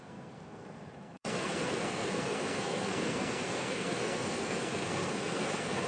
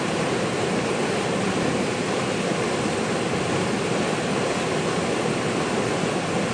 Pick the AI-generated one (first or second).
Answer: first